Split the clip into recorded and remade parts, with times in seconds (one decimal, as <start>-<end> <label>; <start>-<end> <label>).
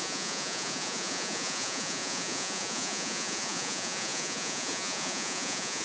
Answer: 0.0-5.8 remade